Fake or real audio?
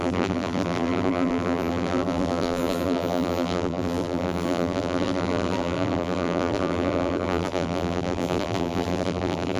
fake